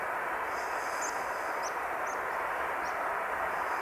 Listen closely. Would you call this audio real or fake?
real